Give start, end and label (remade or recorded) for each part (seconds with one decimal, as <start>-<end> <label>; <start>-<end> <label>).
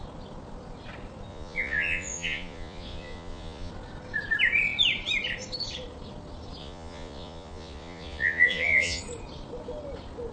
0.0-1.3 recorded; 1.3-3.7 remade; 3.7-6.6 recorded; 6.6-9.0 remade; 9.0-10.3 recorded